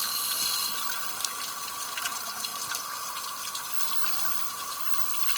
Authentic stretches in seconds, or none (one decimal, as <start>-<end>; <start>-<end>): 0.0-1.2; 2.5-3.0

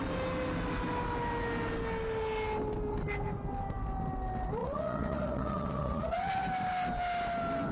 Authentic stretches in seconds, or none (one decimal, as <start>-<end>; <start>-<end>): 0.0-4.6; 6.4-7.7